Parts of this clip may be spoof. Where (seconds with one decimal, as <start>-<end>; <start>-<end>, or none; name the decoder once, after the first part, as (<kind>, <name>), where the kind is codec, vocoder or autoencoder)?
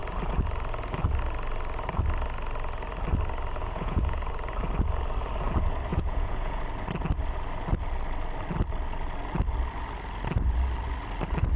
3.6-4.3 (vocoder, Vocos); 5.9-6.6